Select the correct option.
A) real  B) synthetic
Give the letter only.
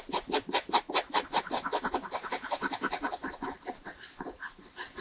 A